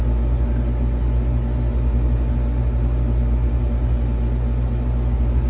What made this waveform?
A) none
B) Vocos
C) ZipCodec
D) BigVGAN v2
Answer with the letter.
A